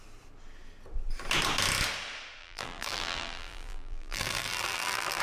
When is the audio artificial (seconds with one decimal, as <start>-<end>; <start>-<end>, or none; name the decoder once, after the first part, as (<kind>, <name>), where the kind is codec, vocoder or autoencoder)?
2.4-5.2 (vocoder, BigVGAN v2)